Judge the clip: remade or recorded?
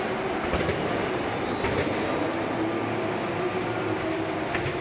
recorded